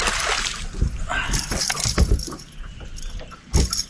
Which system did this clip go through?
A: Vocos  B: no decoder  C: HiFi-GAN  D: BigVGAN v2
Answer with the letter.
B